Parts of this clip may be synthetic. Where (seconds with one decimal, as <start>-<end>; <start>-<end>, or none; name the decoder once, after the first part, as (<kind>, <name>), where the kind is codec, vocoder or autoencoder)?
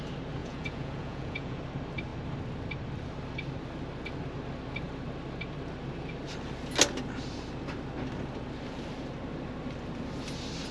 0.4-1.6 (vocoder, Vocos)